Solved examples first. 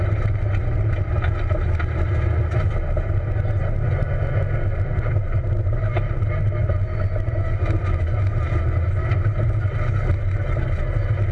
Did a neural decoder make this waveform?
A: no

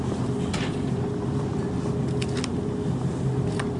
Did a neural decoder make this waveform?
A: no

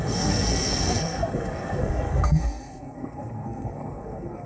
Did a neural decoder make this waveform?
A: yes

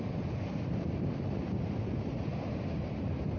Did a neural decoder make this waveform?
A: no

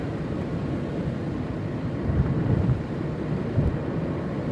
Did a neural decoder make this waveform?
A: yes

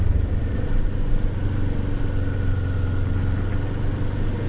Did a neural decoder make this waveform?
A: no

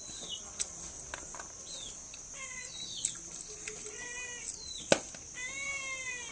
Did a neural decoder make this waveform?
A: no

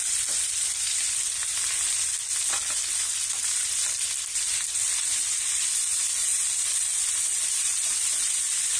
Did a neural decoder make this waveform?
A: no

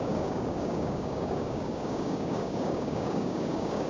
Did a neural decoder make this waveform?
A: yes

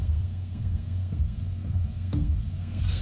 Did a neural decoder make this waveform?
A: yes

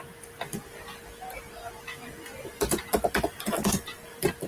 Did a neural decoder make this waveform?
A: no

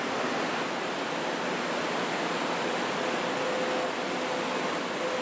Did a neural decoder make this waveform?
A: no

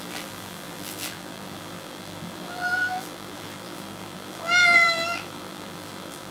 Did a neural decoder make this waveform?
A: yes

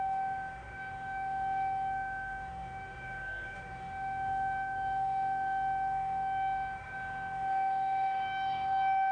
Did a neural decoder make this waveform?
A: yes